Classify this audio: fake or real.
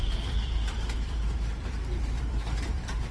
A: fake